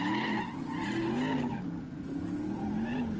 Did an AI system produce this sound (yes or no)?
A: no